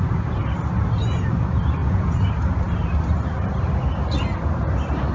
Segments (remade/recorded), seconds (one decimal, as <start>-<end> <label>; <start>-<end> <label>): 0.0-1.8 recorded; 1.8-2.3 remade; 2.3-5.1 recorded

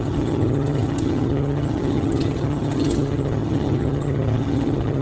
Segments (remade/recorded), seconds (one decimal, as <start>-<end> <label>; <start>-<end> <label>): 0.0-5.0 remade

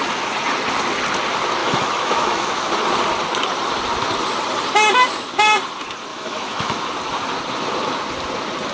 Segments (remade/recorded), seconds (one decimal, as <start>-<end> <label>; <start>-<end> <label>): 0.0-1.6 recorded; 1.6-2.7 remade; 2.7-6.1 recorded; 6.1-6.9 remade; 6.9-8.7 recorded

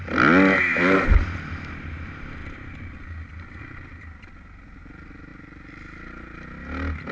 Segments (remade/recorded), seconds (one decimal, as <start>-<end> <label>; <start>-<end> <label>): 0.0-7.1 recorded